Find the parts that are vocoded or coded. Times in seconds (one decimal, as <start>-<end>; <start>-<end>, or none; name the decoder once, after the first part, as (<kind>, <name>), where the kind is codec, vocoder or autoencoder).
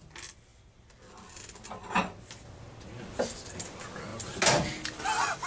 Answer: none